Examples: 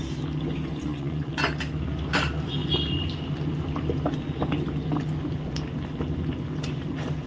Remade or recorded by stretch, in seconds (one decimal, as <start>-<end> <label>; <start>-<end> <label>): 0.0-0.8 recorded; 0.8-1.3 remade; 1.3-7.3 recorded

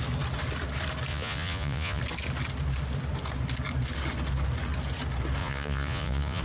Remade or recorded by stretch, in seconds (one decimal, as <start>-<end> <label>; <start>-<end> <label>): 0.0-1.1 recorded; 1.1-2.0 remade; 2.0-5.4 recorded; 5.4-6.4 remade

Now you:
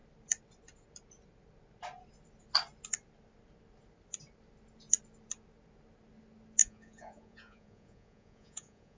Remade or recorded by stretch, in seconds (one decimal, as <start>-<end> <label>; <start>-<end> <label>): 0.0-6.6 recorded; 6.6-9.0 remade

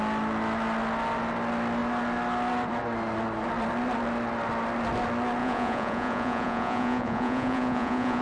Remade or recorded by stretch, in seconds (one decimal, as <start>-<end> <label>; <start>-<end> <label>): 0.0-5.4 recorded; 5.4-8.2 remade